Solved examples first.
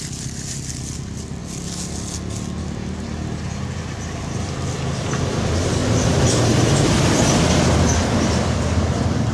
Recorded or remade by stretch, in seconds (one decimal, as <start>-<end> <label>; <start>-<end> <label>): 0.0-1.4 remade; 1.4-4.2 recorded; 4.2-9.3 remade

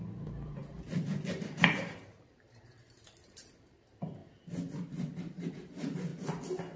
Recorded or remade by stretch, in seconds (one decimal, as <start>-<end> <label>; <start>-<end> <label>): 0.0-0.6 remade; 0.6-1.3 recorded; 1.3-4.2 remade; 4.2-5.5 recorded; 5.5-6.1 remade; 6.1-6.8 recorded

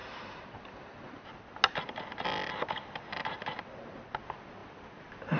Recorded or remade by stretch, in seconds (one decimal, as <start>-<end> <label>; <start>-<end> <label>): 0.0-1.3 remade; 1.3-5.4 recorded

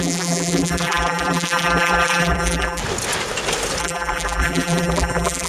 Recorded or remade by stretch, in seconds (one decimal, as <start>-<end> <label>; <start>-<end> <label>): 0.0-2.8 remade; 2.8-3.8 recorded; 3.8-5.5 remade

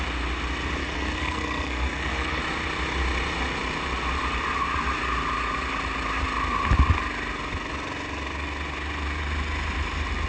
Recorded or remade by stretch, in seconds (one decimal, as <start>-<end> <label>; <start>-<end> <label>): 0.0-0.8 recorded; 0.8-2.4 remade; 2.4-10.3 recorded

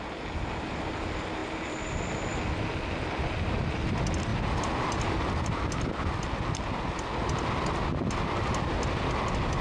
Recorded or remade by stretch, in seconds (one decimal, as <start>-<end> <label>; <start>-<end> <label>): 0.0-9.6 recorded

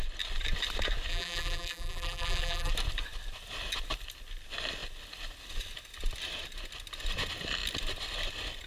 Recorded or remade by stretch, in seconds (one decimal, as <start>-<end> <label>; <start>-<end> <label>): 0.0-1.1 recorded; 1.1-2.7 remade; 2.7-8.7 recorded

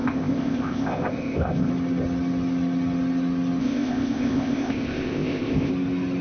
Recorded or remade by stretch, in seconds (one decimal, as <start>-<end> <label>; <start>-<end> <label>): 0.0-1.7 remade; 1.7-3.6 recorded; 3.6-5.7 remade; 5.7-6.2 recorded